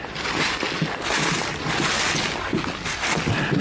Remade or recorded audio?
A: recorded